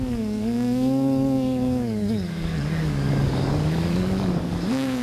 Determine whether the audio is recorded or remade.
remade